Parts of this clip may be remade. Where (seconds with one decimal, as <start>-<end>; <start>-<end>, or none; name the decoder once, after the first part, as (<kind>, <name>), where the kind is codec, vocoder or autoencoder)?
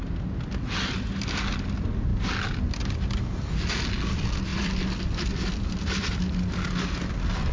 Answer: 4.5-6.1 (vocoder, BigVGAN v2)